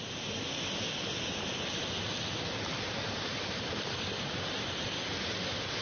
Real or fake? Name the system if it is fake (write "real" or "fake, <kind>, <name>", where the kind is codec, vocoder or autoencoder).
real